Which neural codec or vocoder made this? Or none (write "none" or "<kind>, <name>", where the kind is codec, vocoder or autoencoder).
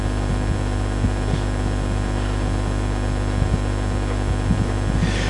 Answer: none